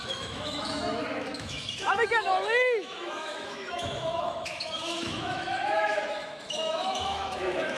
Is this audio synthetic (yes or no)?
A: yes